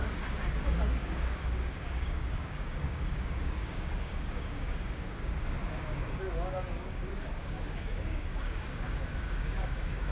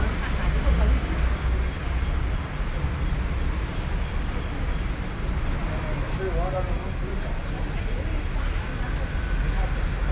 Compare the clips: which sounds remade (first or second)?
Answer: first